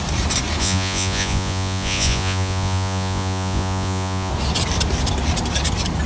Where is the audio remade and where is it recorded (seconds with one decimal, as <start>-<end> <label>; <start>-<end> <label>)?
0.0-0.6 recorded; 0.6-4.3 remade; 4.3-6.1 recorded